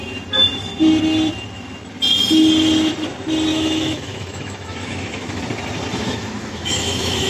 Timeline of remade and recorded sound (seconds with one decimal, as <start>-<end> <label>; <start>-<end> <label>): 0.0-3.5 recorded; 3.5-5.4 remade; 5.4-5.9 recorded; 5.9-7.3 remade